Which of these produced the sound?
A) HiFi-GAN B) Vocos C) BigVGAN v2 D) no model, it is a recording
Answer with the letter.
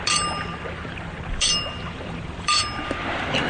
C